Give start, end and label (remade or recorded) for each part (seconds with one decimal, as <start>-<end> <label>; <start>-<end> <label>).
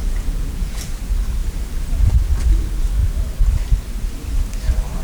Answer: 0.0-0.8 remade; 0.8-5.0 recorded